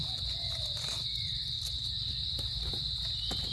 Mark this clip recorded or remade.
recorded